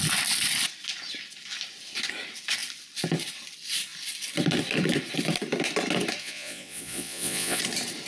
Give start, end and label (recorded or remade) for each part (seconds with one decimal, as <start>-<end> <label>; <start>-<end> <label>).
0.0-6.2 recorded; 6.2-7.6 remade; 7.6-8.1 recorded